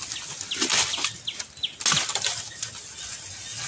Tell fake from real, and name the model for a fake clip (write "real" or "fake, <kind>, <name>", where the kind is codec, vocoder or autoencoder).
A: real